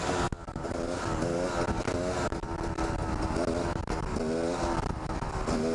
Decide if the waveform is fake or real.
real